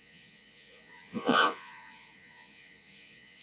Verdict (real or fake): fake